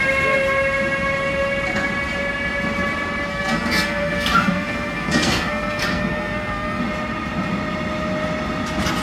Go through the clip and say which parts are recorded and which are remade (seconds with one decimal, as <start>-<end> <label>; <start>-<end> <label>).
0.0-3.3 recorded; 3.3-6.8 remade; 6.8-9.0 recorded